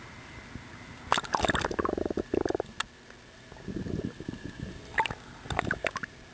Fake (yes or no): no